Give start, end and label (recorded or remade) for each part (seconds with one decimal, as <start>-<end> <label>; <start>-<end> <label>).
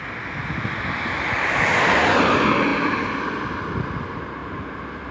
0.0-0.4 recorded; 0.4-1.7 remade; 1.7-2.7 recorded; 2.7-3.2 remade; 3.2-4.4 recorded; 4.4-5.1 remade